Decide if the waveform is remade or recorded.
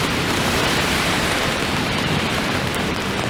remade